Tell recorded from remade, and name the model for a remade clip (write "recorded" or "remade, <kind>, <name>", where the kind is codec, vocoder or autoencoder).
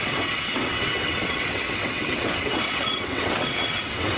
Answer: remade, vocoder, WaveNeXt